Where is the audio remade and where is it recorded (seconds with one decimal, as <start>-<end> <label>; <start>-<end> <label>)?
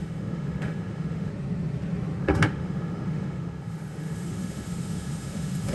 0.0-1.3 remade; 1.3-2.2 recorded; 2.2-5.7 remade